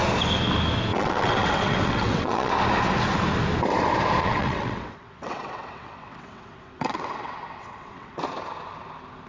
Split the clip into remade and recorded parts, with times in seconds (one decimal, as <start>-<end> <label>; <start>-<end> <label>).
0.0-0.9 recorded; 0.9-2.5 remade; 2.5-4.2 recorded; 4.2-8.2 remade; 8.2-9.3 recorded